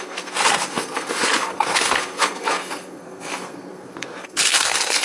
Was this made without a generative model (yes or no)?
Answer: no